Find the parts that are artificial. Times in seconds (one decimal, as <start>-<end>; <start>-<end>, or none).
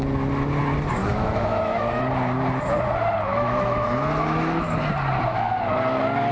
1.0-2.0; 3.3-4.8